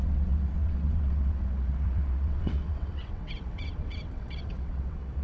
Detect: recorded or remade remade